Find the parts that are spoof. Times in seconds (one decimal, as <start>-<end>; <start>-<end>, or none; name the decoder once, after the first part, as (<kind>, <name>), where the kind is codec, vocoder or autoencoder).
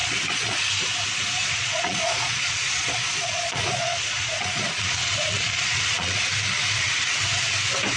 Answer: 0.0-0.6 (vocoder, Vocos); 1.4-6.2